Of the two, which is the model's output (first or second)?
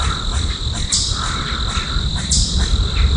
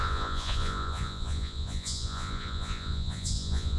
second